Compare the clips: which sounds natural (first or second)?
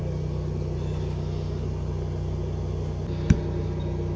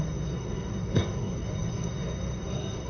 first